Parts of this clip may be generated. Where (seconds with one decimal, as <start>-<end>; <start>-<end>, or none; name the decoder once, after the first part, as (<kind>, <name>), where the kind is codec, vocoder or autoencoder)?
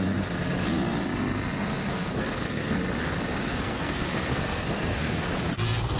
1.8-2.8 (codec, SNAC); 3.5-5.1